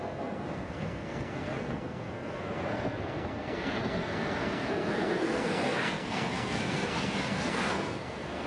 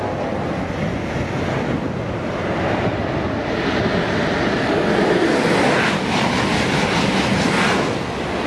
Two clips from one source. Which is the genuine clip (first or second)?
second